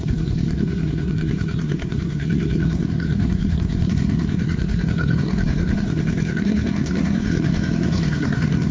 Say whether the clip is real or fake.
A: fake